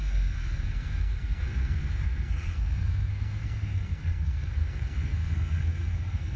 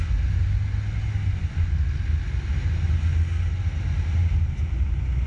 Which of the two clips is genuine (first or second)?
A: second